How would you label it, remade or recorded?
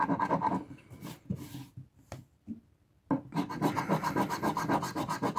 recorded